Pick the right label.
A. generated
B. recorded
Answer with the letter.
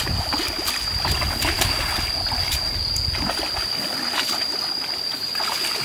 B